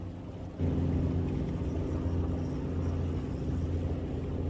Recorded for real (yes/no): yes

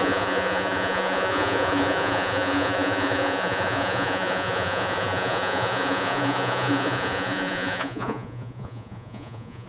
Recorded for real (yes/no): no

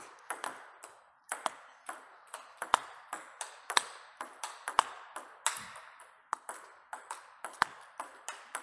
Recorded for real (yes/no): yes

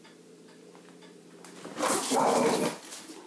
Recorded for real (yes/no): yes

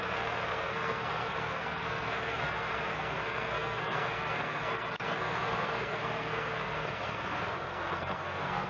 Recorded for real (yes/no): no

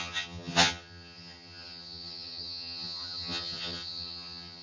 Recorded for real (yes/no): no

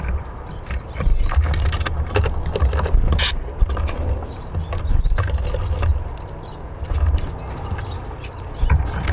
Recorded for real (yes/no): yes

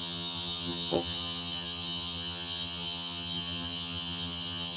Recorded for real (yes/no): no